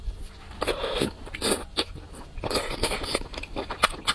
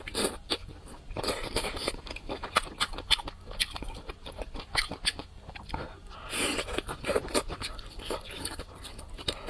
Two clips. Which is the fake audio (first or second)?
second